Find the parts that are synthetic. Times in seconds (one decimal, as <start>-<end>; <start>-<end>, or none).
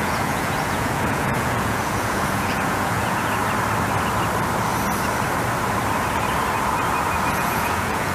0.0-3.4; 7.3-8.1